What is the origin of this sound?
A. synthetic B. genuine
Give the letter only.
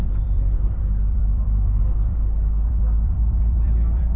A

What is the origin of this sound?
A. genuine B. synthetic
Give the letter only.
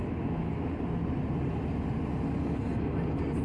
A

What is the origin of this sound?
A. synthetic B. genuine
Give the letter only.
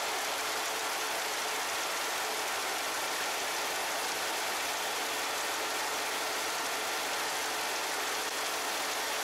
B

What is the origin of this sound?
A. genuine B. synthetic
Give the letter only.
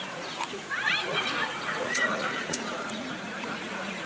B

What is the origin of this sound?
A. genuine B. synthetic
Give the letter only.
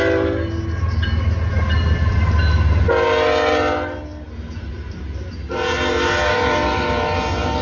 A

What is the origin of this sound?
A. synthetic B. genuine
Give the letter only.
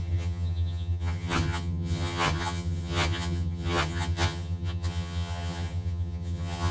A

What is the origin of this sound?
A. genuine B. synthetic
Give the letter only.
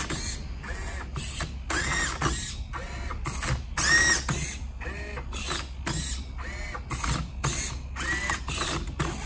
A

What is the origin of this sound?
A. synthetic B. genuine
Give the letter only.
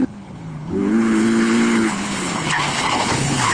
A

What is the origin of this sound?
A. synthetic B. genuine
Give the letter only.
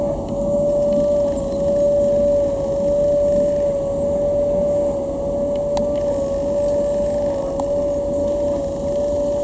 B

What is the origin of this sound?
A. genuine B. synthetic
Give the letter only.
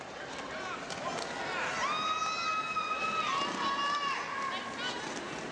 A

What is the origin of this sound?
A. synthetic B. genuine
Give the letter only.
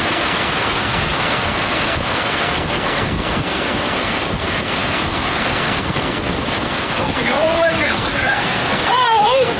A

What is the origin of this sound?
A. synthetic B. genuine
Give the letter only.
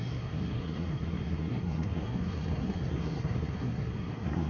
A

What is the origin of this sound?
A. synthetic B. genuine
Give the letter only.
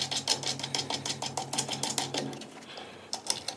B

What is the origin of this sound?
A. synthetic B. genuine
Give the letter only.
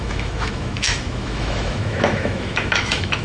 A